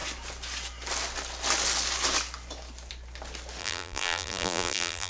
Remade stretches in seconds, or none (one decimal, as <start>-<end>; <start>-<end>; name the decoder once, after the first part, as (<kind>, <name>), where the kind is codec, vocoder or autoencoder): 3.6-5.1 (vocoder, BigVGAN v2)